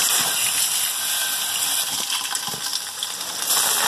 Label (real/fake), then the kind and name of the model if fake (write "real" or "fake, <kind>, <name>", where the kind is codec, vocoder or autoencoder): real